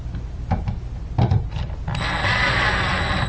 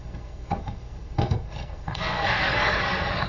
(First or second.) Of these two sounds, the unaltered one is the first